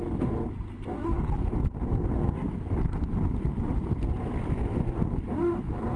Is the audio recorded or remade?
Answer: recorded